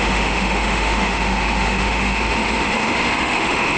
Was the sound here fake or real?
fake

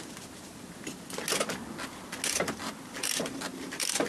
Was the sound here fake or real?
real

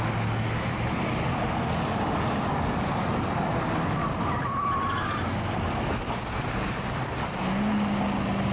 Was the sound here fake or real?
real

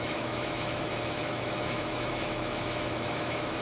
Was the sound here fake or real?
fake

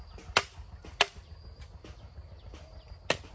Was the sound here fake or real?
real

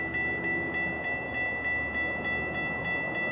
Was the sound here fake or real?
real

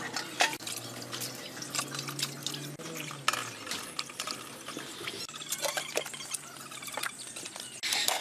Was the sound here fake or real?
real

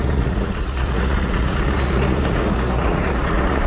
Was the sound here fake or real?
fake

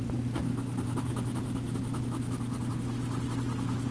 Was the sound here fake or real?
real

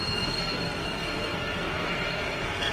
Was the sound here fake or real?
fake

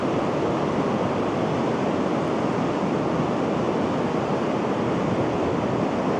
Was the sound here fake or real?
real